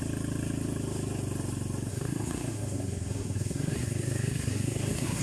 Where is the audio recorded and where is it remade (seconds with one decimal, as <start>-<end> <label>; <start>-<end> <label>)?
0.0-1.9 recorded; 1.9-5.2 remade